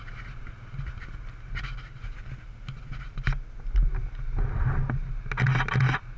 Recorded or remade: recorded